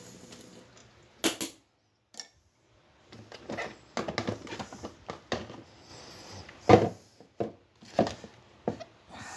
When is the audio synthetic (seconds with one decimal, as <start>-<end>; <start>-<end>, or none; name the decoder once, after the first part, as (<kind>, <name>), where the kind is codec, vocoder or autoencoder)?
none